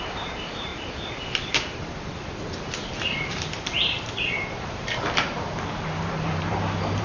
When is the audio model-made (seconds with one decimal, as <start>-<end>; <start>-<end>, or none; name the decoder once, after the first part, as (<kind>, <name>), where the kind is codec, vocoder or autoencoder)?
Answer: 0.0-0.7 (vocoder, BigVGAN v2); 2.9-7.0